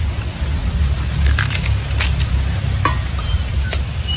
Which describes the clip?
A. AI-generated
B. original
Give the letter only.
B